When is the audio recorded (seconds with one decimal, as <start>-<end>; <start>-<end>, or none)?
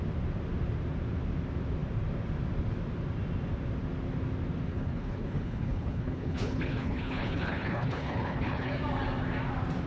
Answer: 0.0-4.7; 8.7-9.9